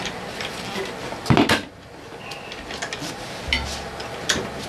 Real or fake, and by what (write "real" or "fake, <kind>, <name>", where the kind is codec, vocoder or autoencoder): real